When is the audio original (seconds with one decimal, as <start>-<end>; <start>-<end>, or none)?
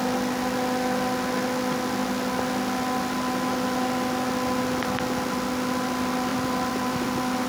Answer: 0.0-6.3